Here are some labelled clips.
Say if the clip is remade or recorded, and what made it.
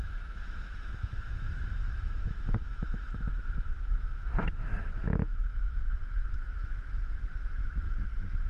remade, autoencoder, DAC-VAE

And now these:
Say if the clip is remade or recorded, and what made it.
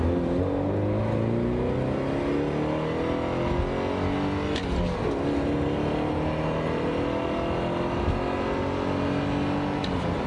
recorded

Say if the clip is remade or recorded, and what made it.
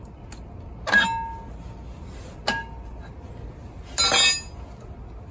recorded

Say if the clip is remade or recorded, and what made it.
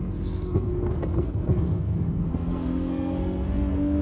remade, codec, SNAC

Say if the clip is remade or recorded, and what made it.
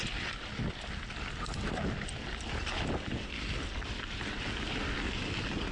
recorded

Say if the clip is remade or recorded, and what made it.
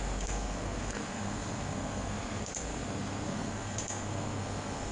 remade, codec, SNAC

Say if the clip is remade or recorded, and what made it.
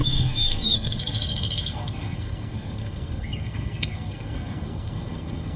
remade, codec, SNAC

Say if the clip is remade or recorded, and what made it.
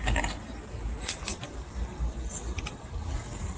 recorded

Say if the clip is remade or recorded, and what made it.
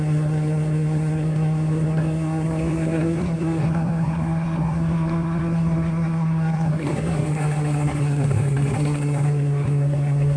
remade, codec, SNAC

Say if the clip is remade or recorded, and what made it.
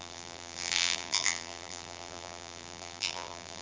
remade, vocoder, BigVGAN v2